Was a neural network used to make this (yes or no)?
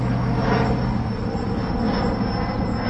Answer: no